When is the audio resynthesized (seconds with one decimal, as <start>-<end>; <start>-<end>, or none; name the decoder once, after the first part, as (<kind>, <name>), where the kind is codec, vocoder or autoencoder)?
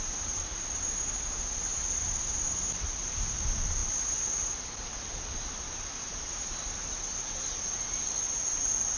none